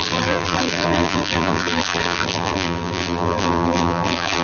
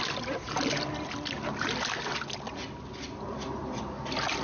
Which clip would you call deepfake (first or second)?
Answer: first